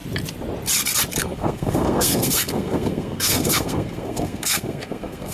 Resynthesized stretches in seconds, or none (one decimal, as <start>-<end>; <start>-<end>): 1.2-5.3